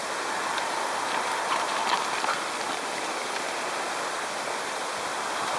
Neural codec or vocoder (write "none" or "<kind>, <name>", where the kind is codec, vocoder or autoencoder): none